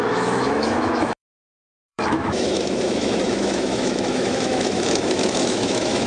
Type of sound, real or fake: fake